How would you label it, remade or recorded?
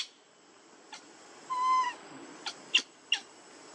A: recorded